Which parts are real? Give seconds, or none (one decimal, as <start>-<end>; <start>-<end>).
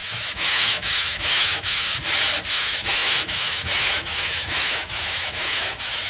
1.9-2.5